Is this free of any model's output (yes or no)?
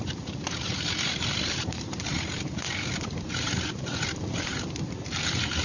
no